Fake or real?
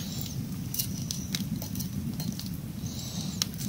real